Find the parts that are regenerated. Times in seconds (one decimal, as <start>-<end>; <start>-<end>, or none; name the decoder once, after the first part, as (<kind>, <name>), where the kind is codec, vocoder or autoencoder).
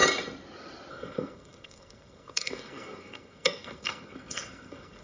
0.9-5.0 (codec, SNAC)